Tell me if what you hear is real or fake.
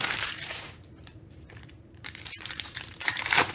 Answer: fake